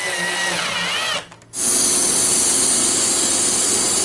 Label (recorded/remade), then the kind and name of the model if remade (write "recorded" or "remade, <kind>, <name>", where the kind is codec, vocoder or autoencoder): recorded